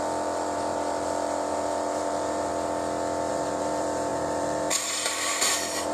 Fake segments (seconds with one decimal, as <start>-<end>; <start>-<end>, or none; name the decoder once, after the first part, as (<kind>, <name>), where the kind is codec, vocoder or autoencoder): 0.0-2.5 (vocoder, BigVGAN v2); 3.3-5.9